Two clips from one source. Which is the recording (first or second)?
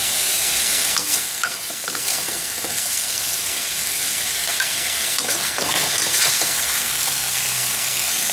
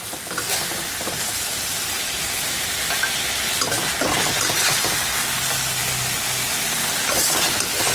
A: second